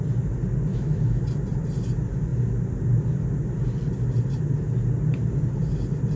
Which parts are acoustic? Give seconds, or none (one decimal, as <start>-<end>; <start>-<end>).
0.0-0.7; 1.2-6.2